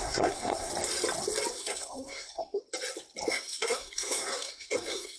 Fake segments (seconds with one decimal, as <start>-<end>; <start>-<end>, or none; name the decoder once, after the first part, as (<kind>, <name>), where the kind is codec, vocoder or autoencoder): 0.0-0.7 (codec, SNAC); 1.5-2.6; 3.3-5.2